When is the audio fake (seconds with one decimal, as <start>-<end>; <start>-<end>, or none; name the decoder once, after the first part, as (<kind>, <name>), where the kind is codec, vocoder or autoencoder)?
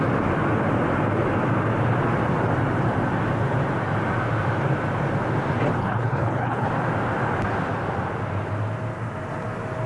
5.8-6.7 (codec, HILCodec)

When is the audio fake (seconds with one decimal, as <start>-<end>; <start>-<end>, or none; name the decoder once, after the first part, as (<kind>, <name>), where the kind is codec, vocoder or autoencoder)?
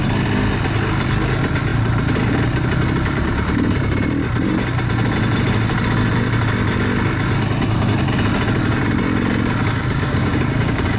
9.6-11.0 (codec, DAC)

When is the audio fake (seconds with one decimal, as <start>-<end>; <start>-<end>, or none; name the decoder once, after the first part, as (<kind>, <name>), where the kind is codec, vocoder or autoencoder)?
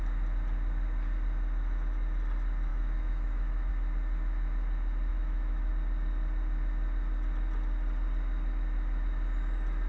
2.7-3.7 (autoencoder, DAC-VAE); 5.1-5.7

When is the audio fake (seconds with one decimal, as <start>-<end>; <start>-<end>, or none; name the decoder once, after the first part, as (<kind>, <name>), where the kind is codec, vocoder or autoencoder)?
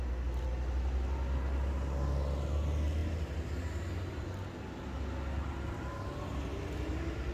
none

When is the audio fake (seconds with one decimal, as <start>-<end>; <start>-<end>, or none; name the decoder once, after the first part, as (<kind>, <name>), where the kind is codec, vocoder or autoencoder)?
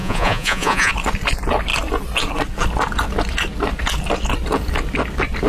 0.0-0.9 (vocoder, Vocos)